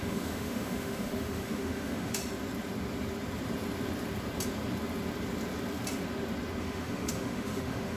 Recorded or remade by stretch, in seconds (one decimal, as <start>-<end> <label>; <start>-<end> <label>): 0.0-2.2 remade; 2.2-6.6 recorded; 6.6-8.0 remade

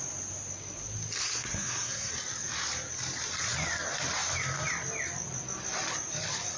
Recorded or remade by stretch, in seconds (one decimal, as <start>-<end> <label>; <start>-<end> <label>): 0.0-1.2 recorded; 1.2-2.1 remade; 2.1-6.6 recorded

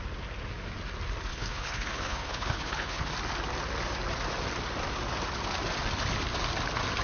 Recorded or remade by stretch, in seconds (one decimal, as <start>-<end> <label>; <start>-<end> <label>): 0.0-1.3 recorded; 1.3-3.1 remade; 3.1-7.0 recorded

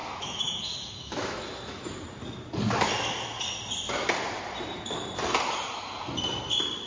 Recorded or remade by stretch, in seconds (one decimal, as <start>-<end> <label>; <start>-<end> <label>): 0.0-1.9 remade; 1.9-6.9 recorded

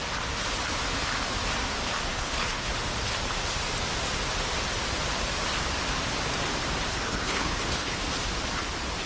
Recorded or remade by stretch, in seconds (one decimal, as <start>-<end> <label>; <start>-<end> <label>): 0.0-2.1 recorded; 2.1-2.7 remade; 2.7-6.9 recorded; 6.9-8.0 remade; 8.0-9.1 recorded

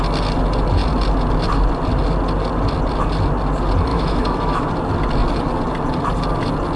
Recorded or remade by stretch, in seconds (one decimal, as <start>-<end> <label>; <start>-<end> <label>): 0.0-3.9 recorded; 3.9-4.7 remade; 4.7-6.8 recorded

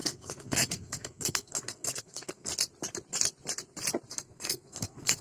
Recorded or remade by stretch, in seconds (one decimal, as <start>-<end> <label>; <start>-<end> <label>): 0.0-2.5 remade; 2.5-4.1 recorded; 4.1-5.2 remade

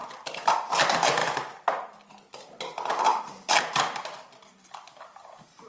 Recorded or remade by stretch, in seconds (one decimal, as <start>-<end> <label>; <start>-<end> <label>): 0.0-0.5 remade; 0.5-5.7 recorded